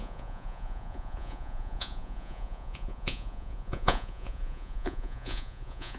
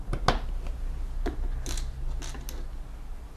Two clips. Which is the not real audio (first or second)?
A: first